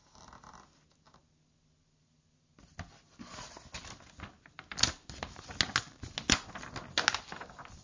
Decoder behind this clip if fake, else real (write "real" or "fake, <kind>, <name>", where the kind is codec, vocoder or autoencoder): real